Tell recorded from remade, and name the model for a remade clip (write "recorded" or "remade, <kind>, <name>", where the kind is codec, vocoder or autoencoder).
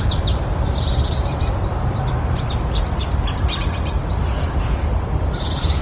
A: remade, vocoder, BigVGAN v2